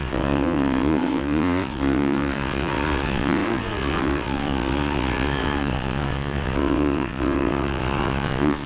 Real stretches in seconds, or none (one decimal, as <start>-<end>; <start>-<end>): none